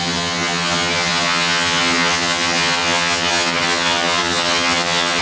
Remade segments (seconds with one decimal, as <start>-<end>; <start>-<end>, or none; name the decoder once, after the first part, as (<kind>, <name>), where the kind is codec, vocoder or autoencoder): 0.0-5.2 (vocoder, HiFi-GAN)